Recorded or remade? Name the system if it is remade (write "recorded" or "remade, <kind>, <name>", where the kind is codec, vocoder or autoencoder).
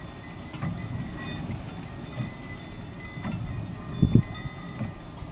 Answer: recorded